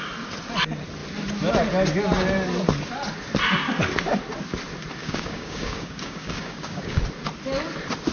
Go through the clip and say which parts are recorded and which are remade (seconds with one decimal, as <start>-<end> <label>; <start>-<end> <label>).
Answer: 0.0-5.0 recorded; 5.0-7.0 remade; 7.0-8.1 recorded